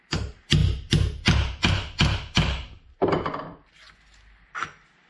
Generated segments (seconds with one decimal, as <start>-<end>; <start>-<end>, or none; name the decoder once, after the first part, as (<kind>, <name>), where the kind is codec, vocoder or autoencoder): 0.6-3.7 (vocoder, BigVGAN v2)